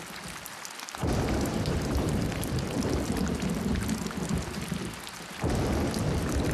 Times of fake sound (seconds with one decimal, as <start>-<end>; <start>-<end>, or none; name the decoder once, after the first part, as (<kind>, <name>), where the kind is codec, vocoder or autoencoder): 1.0-2.5 (vocoder, BigVGAN v2)